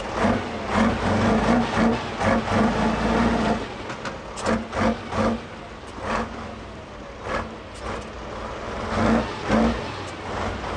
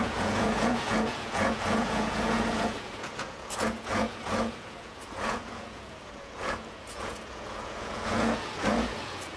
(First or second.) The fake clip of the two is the second